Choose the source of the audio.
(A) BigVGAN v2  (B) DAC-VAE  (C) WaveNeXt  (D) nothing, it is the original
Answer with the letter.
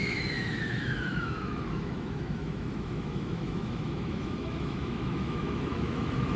B